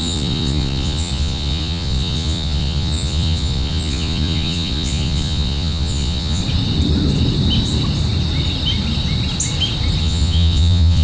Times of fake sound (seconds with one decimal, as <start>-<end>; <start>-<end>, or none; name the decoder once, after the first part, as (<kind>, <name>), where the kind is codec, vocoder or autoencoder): 0.0-6.4 (vocoder, Vocos); 10.0-11.0